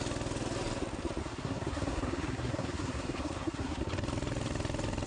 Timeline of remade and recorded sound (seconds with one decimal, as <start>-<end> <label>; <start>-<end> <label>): 0.0-1.2 recorded; 1.2-3.8 remade; 3.8-5.1 recorded